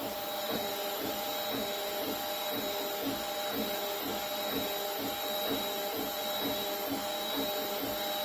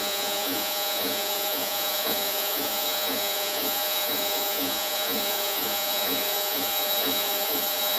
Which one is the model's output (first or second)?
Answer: second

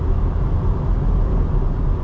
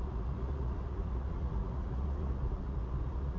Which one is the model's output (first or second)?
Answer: second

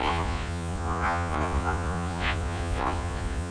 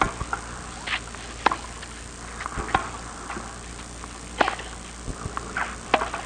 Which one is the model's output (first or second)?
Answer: first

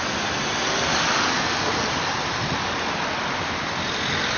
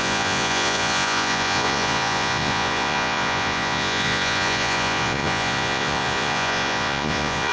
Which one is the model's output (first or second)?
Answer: second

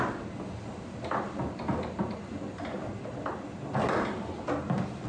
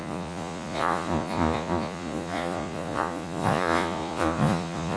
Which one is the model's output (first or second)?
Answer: second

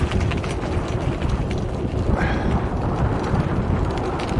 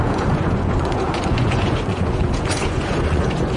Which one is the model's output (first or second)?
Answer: second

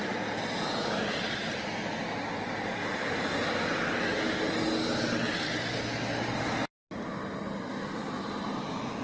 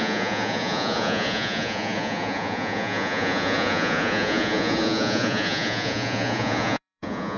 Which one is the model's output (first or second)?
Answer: second